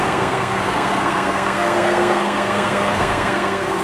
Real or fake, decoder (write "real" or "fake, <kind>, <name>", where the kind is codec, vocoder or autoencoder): fake, codec, SNAC